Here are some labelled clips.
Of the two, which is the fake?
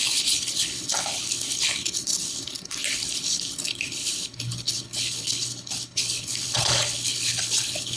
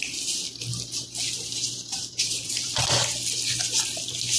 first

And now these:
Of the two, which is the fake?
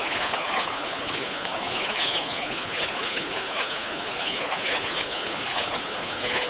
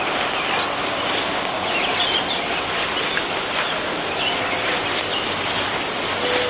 first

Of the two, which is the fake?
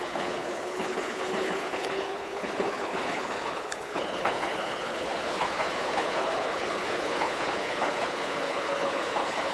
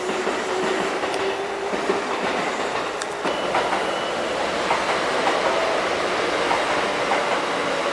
first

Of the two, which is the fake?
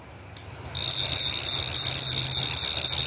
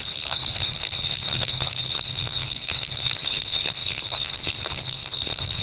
second